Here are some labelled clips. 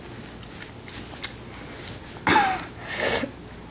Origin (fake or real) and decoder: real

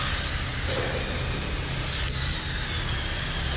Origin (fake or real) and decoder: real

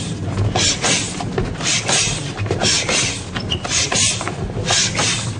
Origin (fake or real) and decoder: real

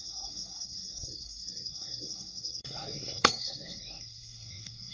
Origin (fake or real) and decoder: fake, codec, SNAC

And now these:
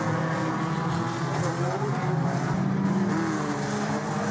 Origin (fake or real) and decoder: real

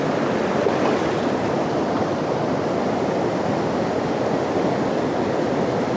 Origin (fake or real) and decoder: real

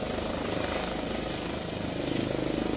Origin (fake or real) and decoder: real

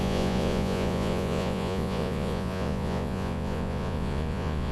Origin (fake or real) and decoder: fake, vocoder, Vocos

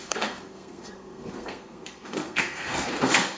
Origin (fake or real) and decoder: fake, codec, SNAC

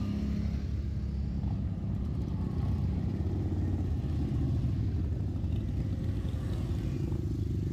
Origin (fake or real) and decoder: real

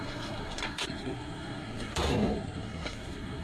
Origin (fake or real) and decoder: fake, codec, SNAC